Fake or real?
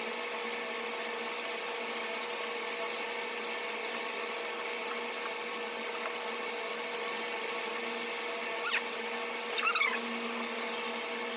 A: real